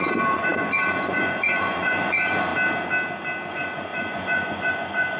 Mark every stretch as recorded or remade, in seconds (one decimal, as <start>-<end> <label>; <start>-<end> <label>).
0.0-2.5 remade; 2.5-3.5 recorded; 3.5-5.2 remade